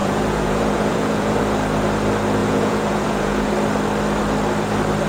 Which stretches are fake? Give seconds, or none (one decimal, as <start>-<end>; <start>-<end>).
0.0-1.4; 2.4-3.5